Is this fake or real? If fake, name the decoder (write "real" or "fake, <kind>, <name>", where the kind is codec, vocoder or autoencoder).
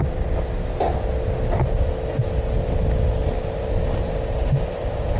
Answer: real